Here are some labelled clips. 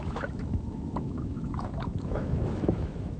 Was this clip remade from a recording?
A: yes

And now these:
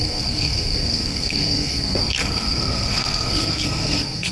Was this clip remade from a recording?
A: yes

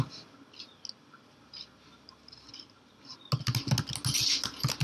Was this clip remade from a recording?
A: no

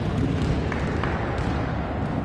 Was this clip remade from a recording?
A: no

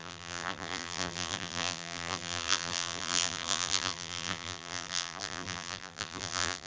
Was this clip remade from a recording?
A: yes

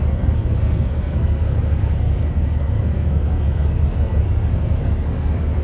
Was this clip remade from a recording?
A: yes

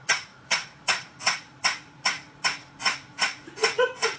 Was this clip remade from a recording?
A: yes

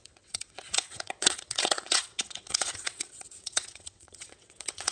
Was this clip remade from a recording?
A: yes